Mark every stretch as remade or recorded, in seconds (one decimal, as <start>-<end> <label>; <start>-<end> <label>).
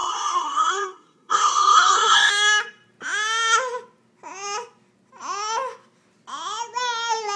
0.0-2.3 remade; 2.3-7.4 recorded